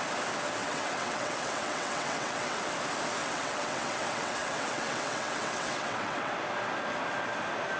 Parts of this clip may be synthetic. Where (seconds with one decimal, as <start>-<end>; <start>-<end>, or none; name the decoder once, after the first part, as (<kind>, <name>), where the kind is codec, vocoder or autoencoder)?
0.6-2.7 (vocoder, WaveNeXt); 3.2-6.3